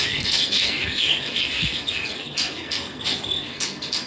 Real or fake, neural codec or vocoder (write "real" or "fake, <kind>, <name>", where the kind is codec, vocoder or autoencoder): fake, codec, SNAC